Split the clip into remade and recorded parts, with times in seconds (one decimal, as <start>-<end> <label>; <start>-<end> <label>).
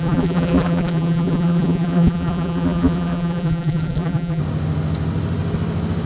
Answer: 0.0-4.4 remade; 4.4-6.1 recorded